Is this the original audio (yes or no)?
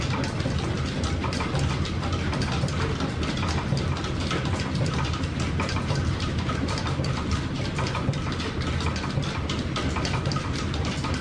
yes